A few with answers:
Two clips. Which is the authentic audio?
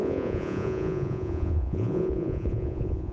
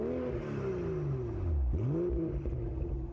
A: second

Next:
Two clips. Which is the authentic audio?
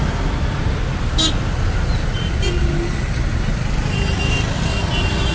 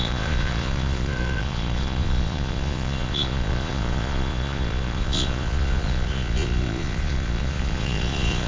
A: first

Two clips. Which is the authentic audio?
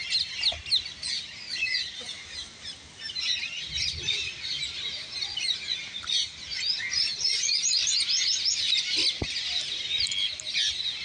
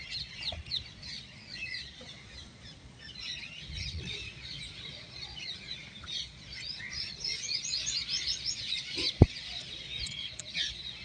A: first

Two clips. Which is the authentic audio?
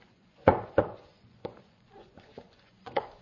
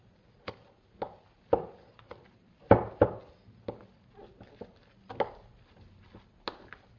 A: second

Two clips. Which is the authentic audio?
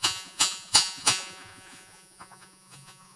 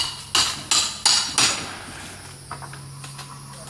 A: second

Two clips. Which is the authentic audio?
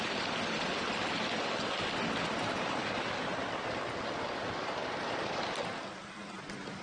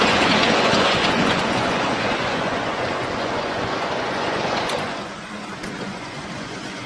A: first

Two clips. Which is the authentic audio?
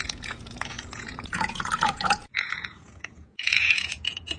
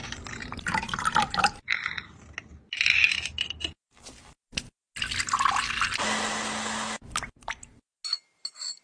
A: second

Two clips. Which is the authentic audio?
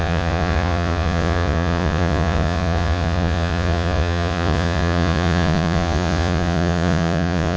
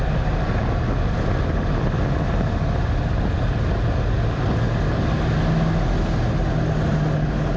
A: second